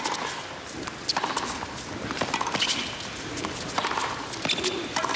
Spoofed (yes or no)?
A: no